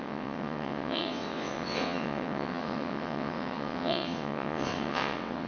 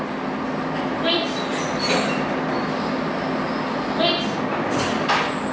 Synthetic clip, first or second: first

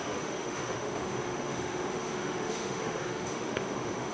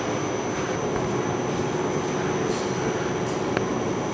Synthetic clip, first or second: first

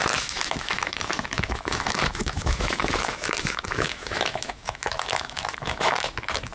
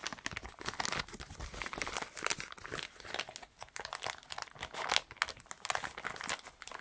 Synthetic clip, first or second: first